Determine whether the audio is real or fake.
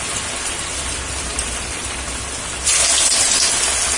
real